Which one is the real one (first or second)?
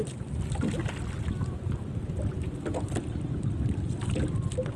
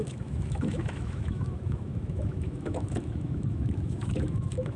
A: first